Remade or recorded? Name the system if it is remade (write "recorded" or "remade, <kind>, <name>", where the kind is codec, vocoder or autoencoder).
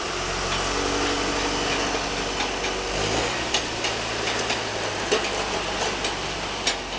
recorded